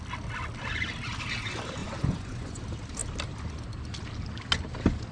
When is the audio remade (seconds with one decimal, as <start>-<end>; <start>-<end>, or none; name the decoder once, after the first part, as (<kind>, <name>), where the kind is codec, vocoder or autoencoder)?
1.8-2.6 (vocoder, Vocos)